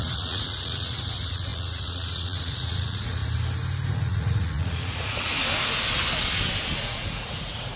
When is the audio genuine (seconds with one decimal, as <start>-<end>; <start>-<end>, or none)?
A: 3.2-3.9; 5.3-6.8

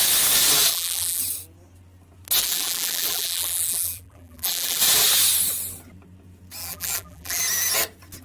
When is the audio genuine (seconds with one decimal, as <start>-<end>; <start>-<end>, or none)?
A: 0.0-0.7; 1.2-2.4; 4.8-6.6; 7.4-8.2

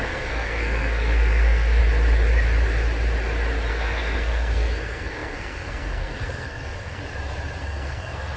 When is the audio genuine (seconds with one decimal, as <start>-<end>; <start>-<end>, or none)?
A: 1.8-3.7; 7.0-7.6

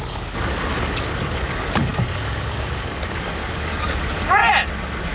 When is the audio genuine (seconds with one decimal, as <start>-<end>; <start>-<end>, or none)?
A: 0.6-1.5; 4.4-5.1

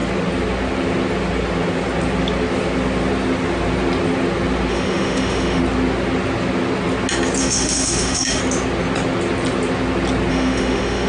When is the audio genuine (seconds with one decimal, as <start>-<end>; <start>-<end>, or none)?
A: 0.0-4.7; 5.6-7.4; 8.4-10.3

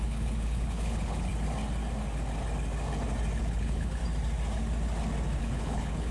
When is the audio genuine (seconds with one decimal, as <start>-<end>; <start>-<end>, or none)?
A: 1.3-3.4; 4.0-5.4

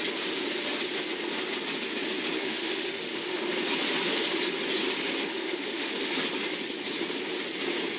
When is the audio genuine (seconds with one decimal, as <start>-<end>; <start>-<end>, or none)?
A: 0.0-2.4; 3.4-5.3; 5.9-8.0